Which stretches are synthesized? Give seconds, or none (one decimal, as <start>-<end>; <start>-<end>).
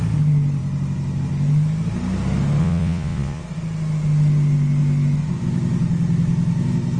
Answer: 2.6-3.4